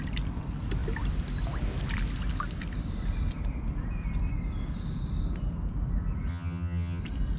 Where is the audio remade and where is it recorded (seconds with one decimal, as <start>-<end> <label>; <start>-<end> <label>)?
0.0-6.3 recorded; 6.3-7.0 remade; 7.0-7.4 recorded